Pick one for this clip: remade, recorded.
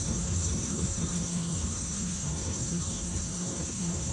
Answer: remade